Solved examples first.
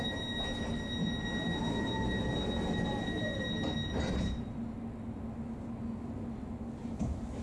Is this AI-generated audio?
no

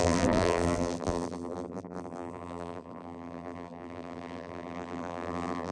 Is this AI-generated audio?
yes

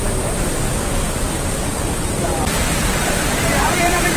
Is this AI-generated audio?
yes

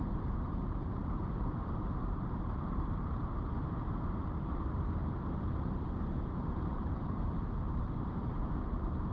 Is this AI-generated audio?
yes